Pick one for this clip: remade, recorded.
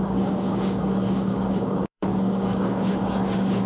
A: remade